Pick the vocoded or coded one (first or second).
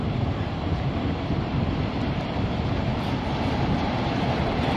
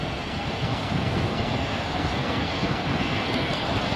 second